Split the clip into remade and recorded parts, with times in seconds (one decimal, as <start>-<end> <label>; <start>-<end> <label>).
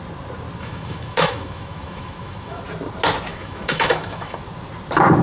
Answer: 0.0-0.6 recorded; 0.6-2.6 remade; 2.6-3.3 recorded; 3.3-4.4 remade; 4.4-5.2 recorded